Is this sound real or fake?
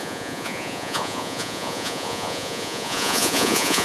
fake